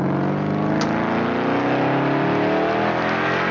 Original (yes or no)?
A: yes